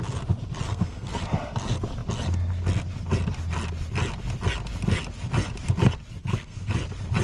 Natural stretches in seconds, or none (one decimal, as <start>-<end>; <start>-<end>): 0.0-0.7; 1.2-6.2; 6.7-7.2